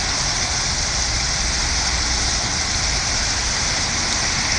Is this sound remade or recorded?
recorded